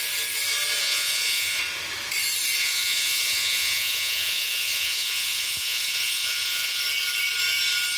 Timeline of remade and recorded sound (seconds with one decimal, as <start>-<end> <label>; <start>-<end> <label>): 0.0-0.8 recorded; 0.8-1.6 remade; 1.6-2.6 recorded; 2.6-6.8 remade; 6.8-8.0 recorded